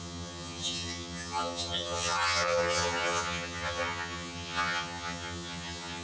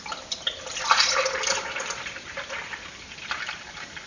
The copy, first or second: first